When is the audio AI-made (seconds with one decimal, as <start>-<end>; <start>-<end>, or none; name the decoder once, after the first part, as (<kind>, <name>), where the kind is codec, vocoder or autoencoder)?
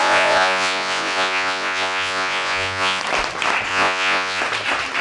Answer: 0.0-3.0 (vocoder, Vocos); 3.7-4.4